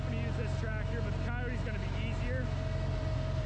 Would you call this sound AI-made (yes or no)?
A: no